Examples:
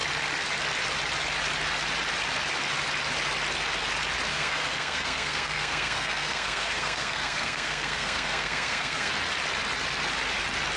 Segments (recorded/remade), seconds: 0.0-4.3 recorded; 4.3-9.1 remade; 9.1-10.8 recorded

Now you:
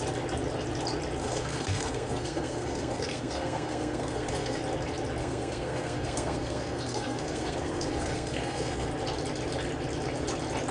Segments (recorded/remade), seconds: 0.0-1.2 recorded; 1.2-4.6 remade; 4.6-5.2 recorded; 5.2-8.9 remade; 8.9-10.7 recorded